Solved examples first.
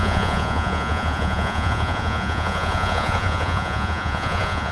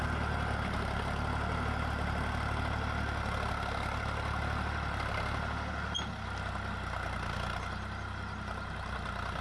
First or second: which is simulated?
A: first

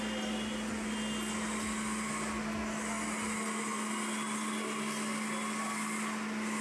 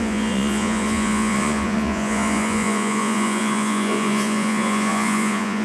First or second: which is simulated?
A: second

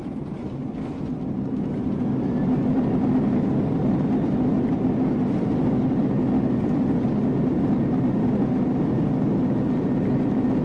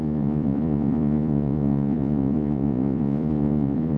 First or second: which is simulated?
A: second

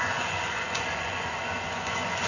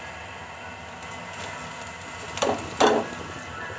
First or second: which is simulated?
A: first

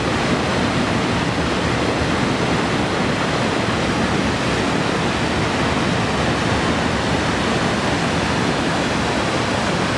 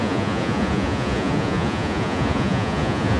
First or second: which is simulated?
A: second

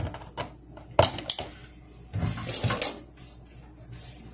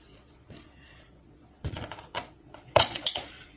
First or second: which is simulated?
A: second